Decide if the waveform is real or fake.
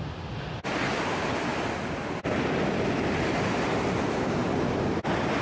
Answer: real